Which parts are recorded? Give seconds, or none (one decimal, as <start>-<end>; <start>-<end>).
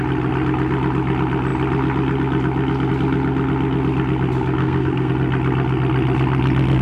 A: 0.0-4.6; 5.1-6.8